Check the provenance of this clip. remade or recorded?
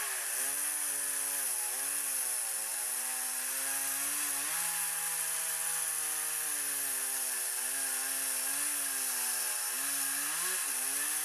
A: recorded